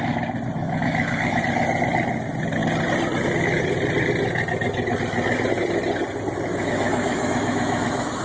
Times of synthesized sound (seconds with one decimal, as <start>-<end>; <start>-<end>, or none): 0.6-1.4; 6.5-8.2